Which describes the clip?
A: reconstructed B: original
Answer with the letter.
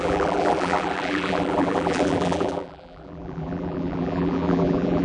A